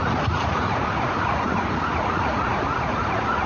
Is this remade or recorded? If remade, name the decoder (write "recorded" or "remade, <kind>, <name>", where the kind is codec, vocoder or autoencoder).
remade, vocoder, Vocos